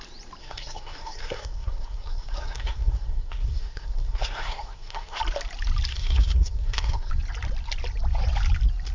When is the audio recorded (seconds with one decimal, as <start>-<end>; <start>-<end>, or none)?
0.0-0.4; 5.2-5.9; 7.1-8.9